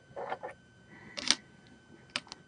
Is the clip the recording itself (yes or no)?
yes